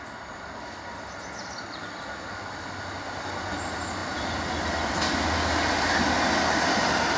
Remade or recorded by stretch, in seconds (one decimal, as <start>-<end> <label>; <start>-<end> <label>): 0.0-7.2 recorded